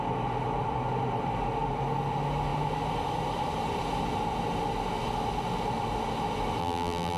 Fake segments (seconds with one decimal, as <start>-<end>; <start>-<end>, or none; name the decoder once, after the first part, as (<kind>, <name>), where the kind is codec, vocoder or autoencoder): 6.6-7.2 (vocoder, BigVGAN v2)